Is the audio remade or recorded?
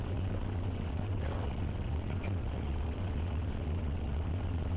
remade